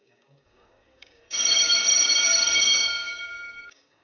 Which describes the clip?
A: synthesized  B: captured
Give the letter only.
A